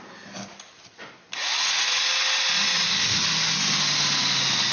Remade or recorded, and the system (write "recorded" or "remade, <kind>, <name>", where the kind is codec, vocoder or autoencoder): recorded